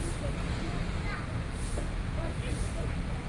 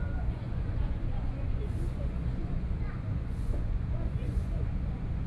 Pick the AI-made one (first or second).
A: second